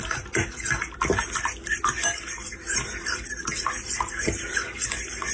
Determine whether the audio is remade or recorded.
recorded